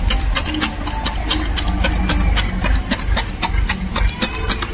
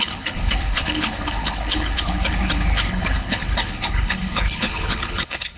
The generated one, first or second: second